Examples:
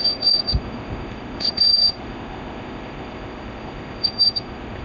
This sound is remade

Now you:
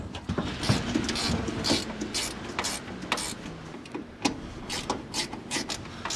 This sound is recorded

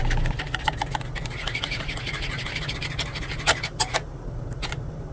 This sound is recorded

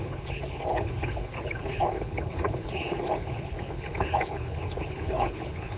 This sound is remade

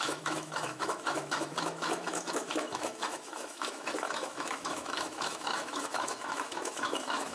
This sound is remade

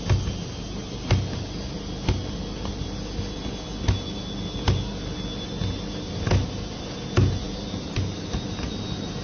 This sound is recorded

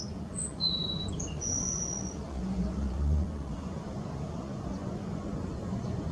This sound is remade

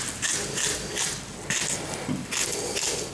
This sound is recorded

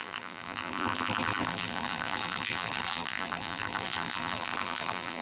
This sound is remade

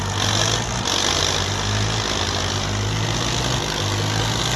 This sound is recorded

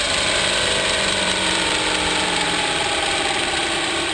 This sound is remade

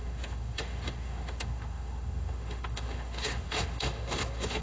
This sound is remade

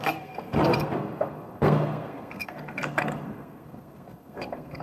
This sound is remade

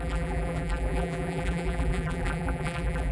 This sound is remade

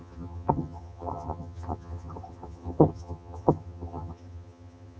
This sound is remade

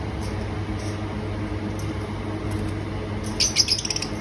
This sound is recorded